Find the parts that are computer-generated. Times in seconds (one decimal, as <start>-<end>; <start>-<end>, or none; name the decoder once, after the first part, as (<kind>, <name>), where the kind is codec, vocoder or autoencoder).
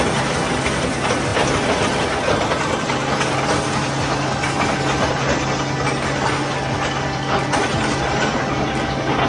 none